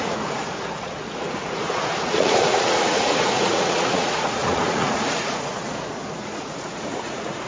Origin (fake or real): fake